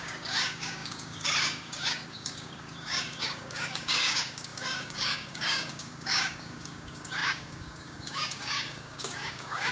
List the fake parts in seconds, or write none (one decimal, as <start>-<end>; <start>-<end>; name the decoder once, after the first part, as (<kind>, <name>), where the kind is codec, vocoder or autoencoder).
0.0-9.7 (codec, DAC)

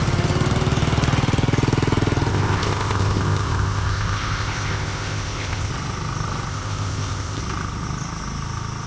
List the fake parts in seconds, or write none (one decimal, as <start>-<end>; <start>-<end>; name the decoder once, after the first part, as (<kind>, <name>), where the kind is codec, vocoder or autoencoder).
2.3-5.7 (codec, ZipCodec); 6.5-7.4

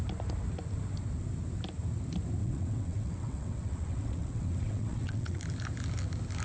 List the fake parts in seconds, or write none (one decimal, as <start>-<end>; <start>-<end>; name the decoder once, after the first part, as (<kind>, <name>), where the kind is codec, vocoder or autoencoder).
2.4-5.4 (vocoder, WaveNeXt)

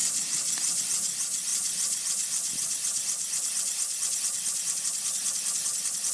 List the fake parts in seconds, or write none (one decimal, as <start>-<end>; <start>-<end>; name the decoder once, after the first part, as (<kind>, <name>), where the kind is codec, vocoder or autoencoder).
none

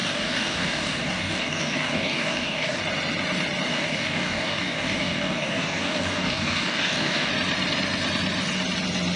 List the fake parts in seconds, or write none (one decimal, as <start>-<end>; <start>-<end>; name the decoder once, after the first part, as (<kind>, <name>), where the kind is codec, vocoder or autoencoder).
0.0-2.8 (codec, DAC); 3.7-7.3

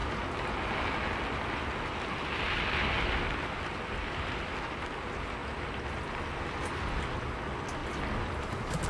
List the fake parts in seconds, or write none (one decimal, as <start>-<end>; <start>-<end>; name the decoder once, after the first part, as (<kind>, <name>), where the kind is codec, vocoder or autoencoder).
none

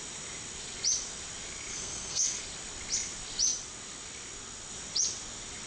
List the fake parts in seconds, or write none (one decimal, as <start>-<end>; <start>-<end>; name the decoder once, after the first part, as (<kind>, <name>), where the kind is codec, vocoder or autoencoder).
1.7-2.4 (codec, SNAC)